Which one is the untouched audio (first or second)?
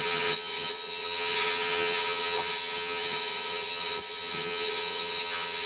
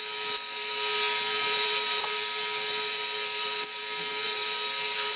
second